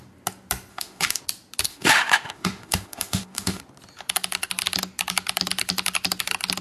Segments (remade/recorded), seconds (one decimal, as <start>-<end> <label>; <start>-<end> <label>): 0.0-0.7 recorded; 0.7-1.2 remade; 1.2-1.7 recorded; 1.7-3.6 remade; 3.6-6.6 recorded